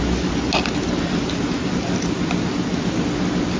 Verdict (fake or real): real